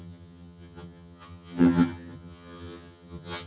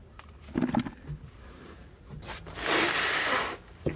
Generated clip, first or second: first